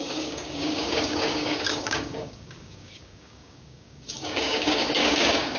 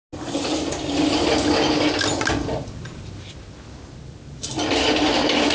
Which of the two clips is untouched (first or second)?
second